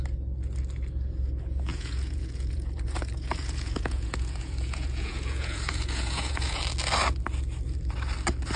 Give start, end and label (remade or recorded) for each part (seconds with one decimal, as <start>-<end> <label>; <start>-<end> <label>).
0.0-1.7 recorded; 1.7-6.6 remade; 6.6-8.6 recorded